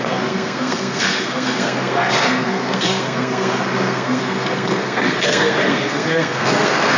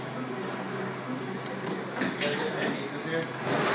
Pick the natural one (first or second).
second